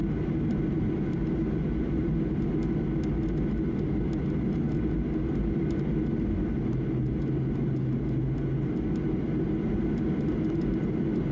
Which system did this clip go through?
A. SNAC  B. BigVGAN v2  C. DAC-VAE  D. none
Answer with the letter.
D